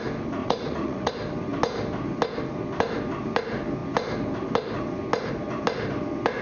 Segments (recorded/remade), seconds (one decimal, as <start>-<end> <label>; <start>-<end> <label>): 0.0-0.4 recorded; 0.4-1.1 remade; 1.1-6.4 recorded